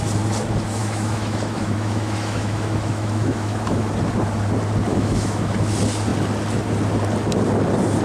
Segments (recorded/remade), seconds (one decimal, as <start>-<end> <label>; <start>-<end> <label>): 0.0-0.8 recorded; 0.8-3.9 remade; 3.9-4.9 recorded; 4.9-5.4 remade; 5.4-8.0 recorded